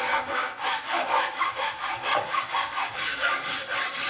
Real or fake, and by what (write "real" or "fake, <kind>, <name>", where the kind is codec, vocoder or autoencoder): fake, codec, DAC